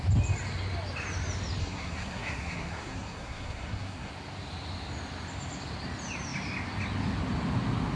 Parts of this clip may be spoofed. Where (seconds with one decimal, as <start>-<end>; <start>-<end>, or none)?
1.6-4.1